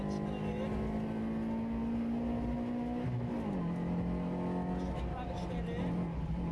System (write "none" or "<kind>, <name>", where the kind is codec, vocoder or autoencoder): none